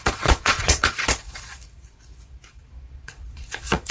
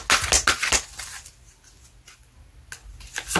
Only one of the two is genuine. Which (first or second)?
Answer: second